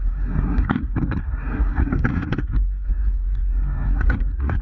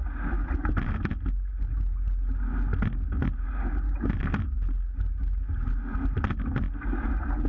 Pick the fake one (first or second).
first